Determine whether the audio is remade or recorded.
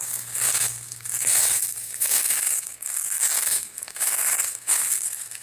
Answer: remade